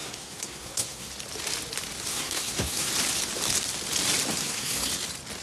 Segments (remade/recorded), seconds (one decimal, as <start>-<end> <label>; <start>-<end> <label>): 0.0-1.1 remade; 1.1-2.1 recorded; 2.1-2.9 remade; 2.9-4.4 recorded; 4.4-4.9 remade; 4.9-5.4 recorded